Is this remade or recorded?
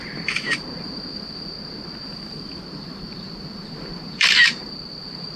remade